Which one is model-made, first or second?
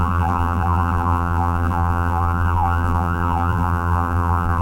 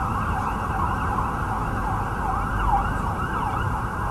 first